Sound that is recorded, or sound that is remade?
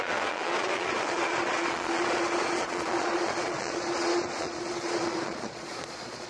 remade